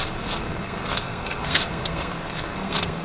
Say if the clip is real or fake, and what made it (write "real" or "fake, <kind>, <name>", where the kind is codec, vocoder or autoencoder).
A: fake, codec, SNAC